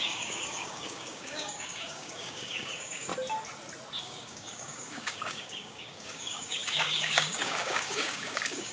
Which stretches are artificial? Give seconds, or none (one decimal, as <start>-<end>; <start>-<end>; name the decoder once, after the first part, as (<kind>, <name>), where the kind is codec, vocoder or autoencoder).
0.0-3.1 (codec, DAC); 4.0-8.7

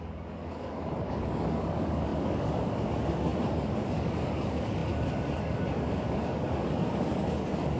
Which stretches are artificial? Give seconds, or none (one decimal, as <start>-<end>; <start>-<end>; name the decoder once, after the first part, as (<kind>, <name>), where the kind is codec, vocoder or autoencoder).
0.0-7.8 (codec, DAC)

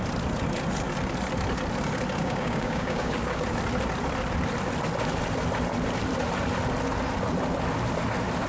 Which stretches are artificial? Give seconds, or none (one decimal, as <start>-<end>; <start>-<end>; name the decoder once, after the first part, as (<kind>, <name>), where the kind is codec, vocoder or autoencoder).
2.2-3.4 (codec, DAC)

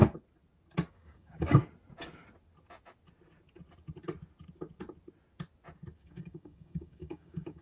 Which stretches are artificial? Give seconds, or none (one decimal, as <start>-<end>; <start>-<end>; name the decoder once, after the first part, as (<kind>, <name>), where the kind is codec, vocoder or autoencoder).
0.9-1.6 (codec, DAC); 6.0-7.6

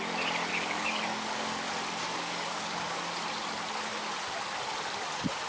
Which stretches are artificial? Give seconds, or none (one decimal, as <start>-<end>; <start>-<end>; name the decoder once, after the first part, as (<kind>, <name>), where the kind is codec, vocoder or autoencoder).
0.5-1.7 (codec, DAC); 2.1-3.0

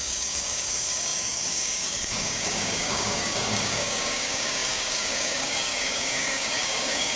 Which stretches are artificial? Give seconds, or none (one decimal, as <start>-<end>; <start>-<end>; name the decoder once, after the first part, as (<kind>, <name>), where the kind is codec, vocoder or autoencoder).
0.0-7.2 (codec, DAC)